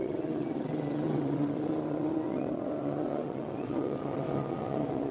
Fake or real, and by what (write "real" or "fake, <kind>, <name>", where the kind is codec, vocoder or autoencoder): fake, vocoder, WaveNeXt